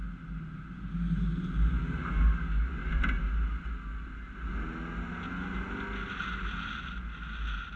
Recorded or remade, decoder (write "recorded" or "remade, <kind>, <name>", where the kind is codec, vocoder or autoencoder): recorded